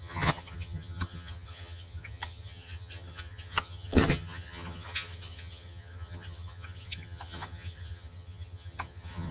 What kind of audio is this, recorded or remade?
remade